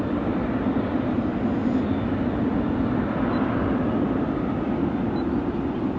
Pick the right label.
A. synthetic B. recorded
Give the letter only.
B